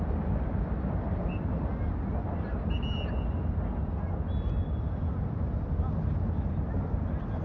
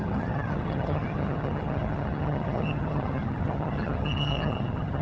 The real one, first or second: first